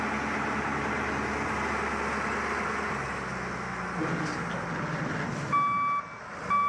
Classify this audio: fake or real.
real